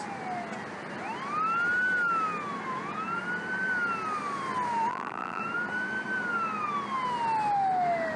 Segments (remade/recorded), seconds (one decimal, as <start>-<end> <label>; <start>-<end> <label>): 0.0-4.9 recorded; 4.9-5.4 remade; 5.4-8.2 recorded